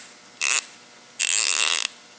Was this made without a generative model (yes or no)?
yes